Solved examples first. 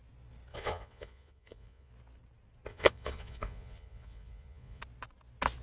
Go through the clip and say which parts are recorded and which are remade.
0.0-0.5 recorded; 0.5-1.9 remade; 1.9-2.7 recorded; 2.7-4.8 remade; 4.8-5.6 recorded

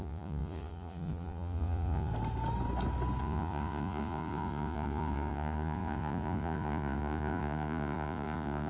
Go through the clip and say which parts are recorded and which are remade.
0.0-2.1 remade; 2.1-3.2 recorded; 3.2-8.7 remade